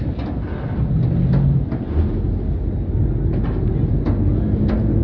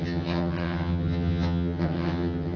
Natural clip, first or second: first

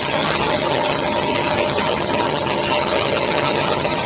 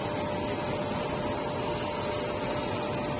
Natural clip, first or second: second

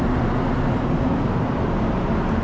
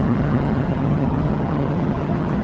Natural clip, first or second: first